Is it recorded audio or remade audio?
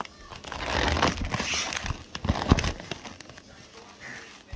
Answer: recorded